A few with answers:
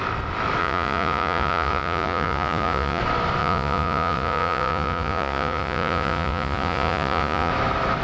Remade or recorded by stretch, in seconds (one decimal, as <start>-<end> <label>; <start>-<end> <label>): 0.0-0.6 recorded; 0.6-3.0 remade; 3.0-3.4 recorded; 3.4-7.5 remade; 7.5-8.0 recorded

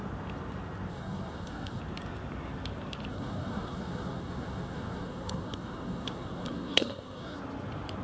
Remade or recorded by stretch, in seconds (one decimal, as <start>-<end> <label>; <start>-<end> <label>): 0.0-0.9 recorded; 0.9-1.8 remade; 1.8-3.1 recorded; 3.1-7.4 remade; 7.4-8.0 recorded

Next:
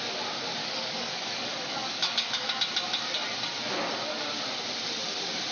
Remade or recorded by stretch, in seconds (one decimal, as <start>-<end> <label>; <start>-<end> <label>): 0.0-0.6 recorded; 0.6-2.6 remade; 2.6-5.5 recorded

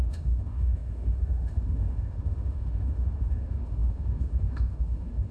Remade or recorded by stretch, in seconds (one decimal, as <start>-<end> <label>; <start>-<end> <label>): 0.0-5.3 remade

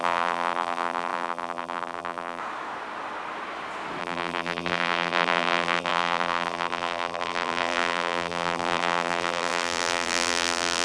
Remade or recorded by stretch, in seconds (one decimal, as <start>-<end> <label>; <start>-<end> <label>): 0.0-2.4 remade; 2.4-4.0 recorded; 4.0-10.8 remade

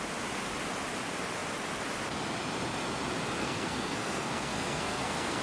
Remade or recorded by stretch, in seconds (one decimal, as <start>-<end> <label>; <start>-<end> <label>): 0.0-3.4 recorded; 3.4-5.4 remade